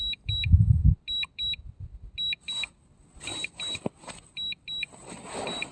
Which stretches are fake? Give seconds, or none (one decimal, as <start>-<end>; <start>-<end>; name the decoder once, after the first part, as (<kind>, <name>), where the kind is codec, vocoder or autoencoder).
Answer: none